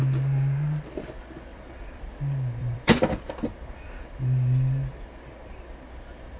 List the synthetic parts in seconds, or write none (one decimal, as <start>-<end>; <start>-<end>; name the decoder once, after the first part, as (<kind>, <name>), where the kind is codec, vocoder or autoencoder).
1.5-2.2 (vocoder, BigVGAN v2); 2.6-4.0